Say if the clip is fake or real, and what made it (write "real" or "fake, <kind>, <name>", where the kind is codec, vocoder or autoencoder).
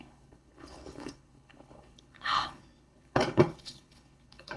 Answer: fake, codec, HILCodec